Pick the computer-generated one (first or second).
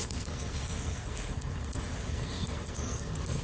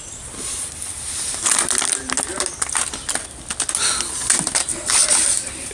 first